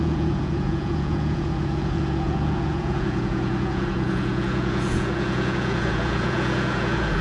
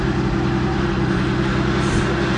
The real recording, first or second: second